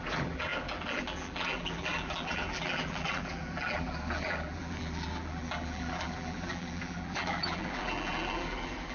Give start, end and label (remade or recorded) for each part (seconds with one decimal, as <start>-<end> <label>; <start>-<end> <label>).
0.0-8.9 remade